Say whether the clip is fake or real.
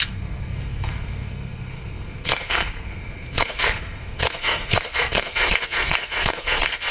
fake